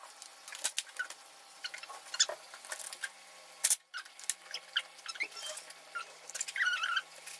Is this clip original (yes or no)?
yes